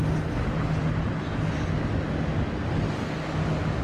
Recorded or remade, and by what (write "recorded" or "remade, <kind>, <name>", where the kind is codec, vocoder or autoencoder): recorded